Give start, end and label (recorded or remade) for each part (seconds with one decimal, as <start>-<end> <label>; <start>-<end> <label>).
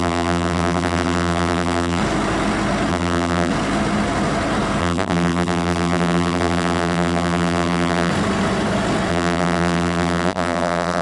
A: 0.0-2.0 remade; 2.0-2.9 recorded; 2.9-3.5 remade; 3.5-4.8 recorded; 4.8-8.1 remade; 8.1-9.1 recorded; 9.1-11.0 remade